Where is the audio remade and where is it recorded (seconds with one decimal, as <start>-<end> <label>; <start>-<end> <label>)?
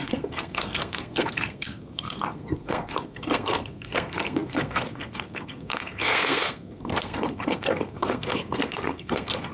0.0-9.5 remade